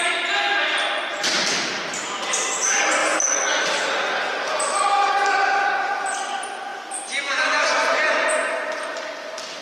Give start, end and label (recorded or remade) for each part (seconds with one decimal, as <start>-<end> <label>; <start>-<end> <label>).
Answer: 0.0-9.6 recorded